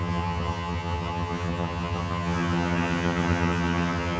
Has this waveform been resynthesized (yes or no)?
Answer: yes